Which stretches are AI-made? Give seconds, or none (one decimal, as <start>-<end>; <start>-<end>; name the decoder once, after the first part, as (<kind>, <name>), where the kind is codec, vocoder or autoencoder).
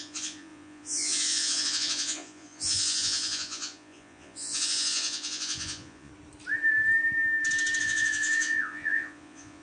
0.0-6.1 (vocoder, Vocos); 7.8-9.6